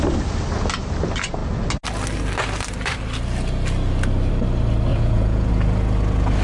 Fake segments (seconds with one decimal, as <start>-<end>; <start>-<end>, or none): 4.9-5.5